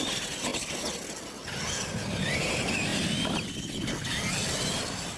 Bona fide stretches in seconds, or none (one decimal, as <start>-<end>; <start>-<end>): 0.0-5.2